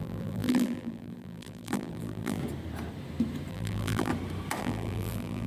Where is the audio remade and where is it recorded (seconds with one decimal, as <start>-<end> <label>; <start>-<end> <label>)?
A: 0.0-2.4 remade; 2.4-3.5 recorded; 3.5-4.1 remade; 4.1-4.6 recorded; 4.6-5.5 remade